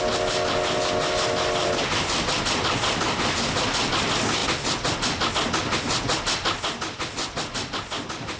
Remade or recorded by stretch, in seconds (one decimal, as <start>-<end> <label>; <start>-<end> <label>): 0.0-8.4 recorded